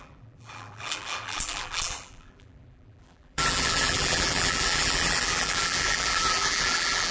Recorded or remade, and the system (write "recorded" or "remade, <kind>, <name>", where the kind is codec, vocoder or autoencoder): remade, vocoder, BigVGAN v2